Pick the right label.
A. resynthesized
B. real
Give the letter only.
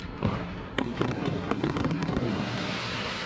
A